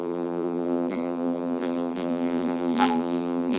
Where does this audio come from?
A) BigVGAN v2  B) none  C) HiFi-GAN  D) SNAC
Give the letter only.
A